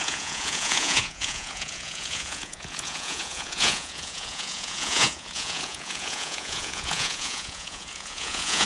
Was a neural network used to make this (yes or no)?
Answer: yes